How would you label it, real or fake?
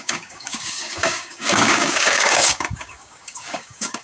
fake